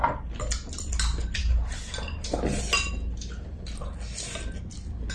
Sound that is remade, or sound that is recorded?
recorded